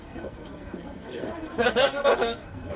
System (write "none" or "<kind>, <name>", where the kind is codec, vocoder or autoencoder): codec, SNAC